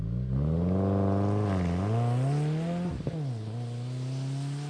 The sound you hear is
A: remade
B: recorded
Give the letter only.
B